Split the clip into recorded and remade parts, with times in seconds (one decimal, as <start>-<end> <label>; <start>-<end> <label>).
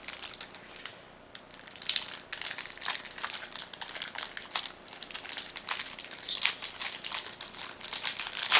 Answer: 0.0-8.6 recorded